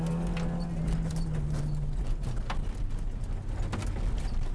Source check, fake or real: real